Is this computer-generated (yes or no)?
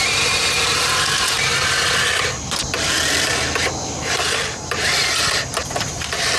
no